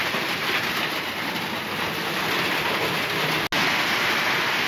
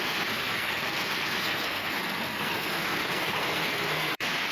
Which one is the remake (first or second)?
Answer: second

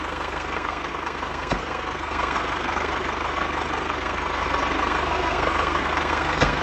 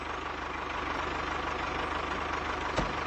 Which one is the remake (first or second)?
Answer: first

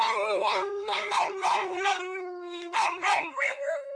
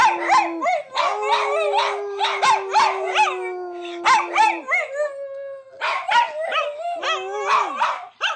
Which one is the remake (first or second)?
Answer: first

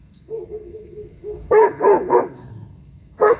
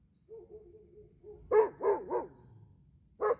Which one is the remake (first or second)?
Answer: first